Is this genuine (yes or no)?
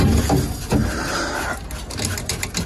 yes